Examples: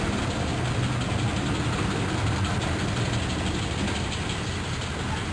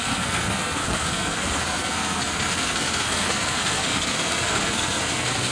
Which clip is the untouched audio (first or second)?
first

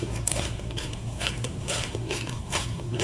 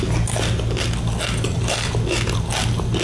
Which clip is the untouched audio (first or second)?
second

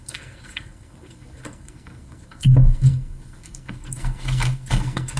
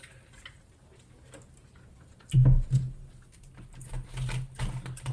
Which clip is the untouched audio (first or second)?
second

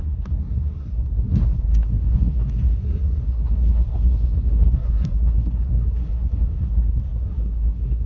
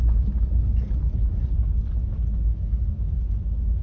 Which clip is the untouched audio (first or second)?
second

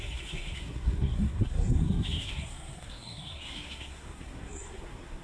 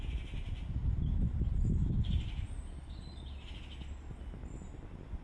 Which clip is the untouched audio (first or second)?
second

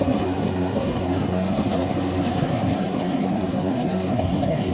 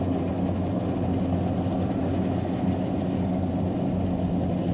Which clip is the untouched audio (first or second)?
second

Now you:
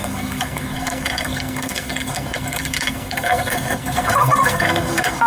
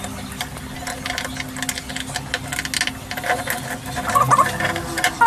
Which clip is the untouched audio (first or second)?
second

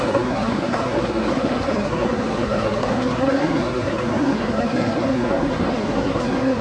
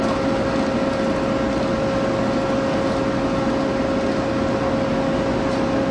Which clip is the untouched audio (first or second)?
second